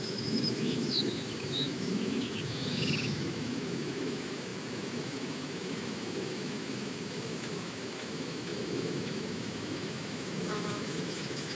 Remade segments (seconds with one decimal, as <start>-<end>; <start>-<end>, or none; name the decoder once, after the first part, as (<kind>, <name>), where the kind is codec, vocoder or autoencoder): 0.0-11.5 (autoencoder, DAC-VAE)